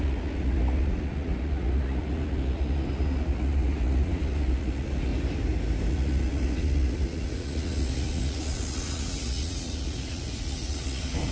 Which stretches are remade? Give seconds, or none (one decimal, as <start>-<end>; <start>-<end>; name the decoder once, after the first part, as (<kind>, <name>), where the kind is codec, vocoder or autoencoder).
0.0-5.1 (vocoder, Vocos); 5.9-11.3